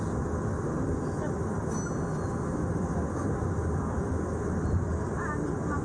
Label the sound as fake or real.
real